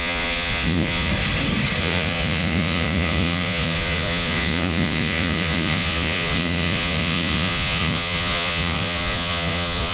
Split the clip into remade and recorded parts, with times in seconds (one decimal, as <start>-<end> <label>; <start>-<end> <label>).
0.0-1.1 remade; 1.1-1.8 recorded; 1.8-9.9 remade